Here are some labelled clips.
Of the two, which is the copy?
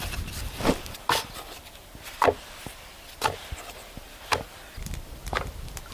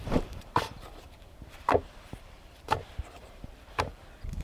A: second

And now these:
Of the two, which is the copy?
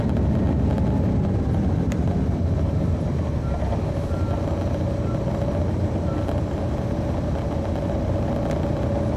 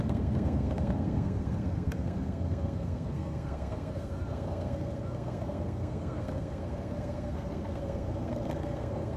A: second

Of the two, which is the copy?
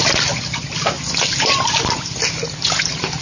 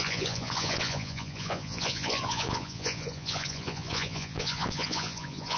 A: second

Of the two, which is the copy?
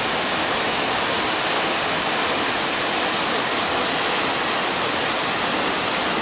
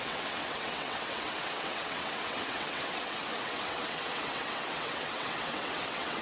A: second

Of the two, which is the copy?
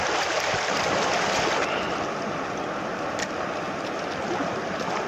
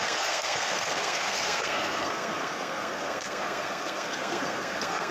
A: second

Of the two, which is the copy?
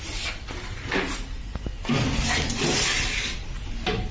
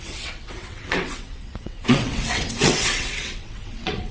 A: second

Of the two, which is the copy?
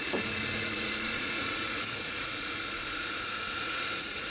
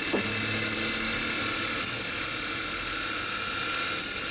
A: first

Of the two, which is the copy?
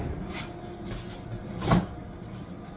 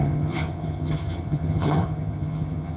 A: second